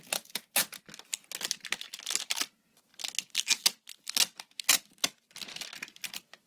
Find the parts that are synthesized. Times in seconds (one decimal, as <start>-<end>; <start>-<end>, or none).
none